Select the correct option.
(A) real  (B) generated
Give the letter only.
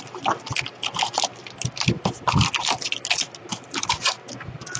A